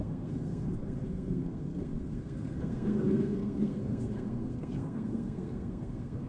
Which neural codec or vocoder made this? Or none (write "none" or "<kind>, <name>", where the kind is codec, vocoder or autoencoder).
codec, SNAC